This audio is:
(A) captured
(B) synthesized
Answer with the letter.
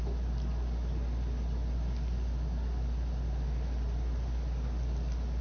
A